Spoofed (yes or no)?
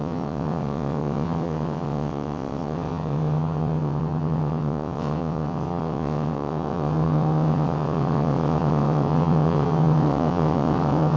yes